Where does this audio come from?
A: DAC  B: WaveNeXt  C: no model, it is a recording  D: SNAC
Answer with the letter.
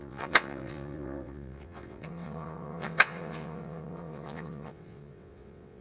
B